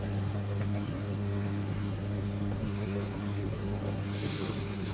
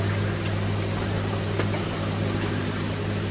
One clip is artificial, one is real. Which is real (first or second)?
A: second